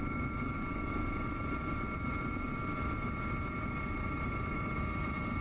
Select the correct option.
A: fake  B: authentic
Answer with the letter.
A